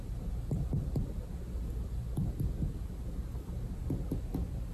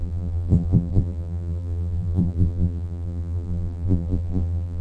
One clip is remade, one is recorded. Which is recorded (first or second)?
first